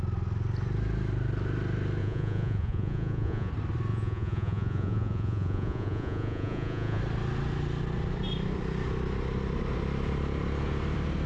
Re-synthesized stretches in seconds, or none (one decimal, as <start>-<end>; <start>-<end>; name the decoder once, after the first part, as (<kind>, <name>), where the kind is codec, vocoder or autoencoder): 2.0-3.5 (vocoder, Vocos); 3.9-7.0